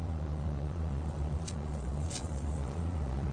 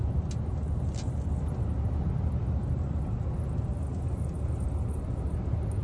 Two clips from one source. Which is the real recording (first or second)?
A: second